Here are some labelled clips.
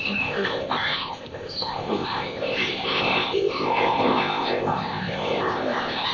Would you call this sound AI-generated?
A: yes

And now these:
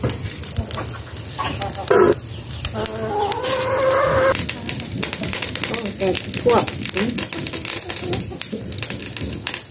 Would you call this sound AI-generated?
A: no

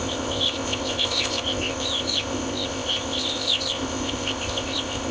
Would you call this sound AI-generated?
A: yes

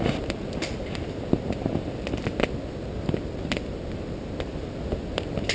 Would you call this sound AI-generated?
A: no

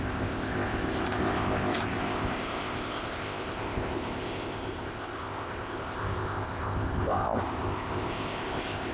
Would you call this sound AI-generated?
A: yes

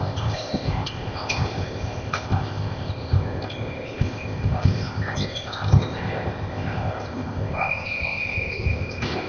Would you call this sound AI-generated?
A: yes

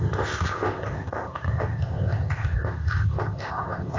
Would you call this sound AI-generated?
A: yes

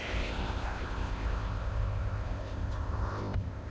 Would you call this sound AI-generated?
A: yes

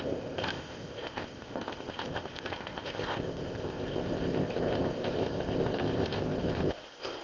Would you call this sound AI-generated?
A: yes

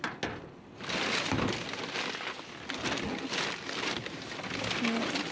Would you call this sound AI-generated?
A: no